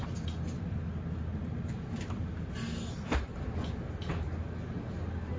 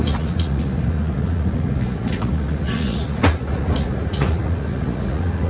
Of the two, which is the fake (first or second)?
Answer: second